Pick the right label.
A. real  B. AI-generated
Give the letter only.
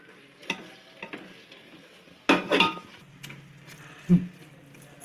A